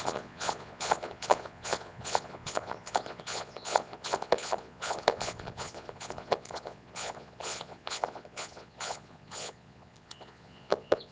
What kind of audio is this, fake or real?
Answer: fake